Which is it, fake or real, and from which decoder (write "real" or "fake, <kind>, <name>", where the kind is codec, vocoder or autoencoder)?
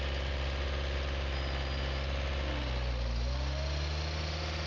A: real